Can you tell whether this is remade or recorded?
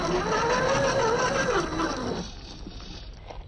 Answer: recorded